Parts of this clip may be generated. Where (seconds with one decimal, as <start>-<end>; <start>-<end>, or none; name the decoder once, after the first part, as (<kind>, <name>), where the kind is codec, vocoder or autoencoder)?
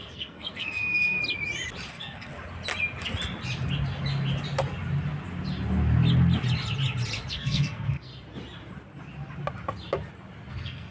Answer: 0.0-1.2 (codec, SNAC); 1.9-2.3; 7.3-8.1; 10.5-10.9